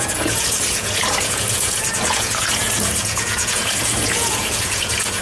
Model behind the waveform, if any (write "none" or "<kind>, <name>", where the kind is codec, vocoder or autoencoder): vocoder, Vocos